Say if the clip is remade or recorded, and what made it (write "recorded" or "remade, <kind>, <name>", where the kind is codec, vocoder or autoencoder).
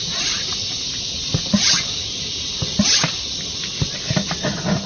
recorded